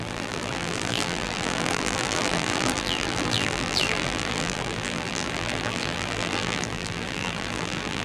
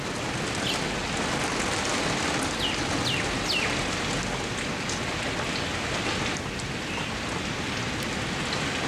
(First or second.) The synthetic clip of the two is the first